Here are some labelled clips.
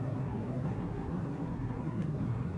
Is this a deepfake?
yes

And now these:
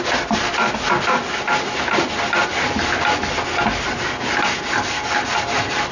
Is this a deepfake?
no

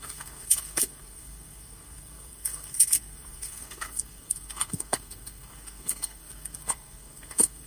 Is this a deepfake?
yes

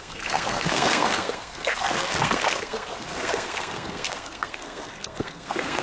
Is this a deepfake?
yes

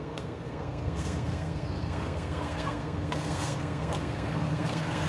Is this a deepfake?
yes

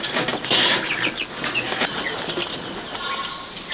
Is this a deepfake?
no